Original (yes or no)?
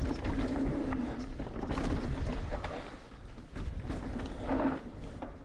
yes